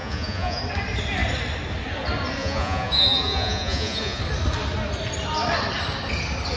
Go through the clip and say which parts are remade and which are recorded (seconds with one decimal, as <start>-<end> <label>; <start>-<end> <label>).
0.0-0.6 remade; 0.6-2.4 recorded; 2.4-4.2 remade; 4.2-6.6 recorded